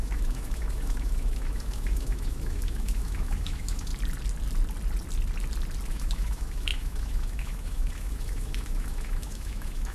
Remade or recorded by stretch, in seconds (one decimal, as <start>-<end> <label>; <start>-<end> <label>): 0.0-3.9 remade; 3.9-5.9 recorded; 5.9-9.9 remade